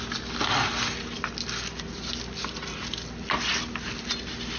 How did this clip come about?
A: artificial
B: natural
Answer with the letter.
B